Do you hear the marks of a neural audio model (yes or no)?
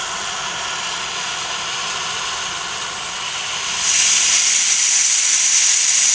yes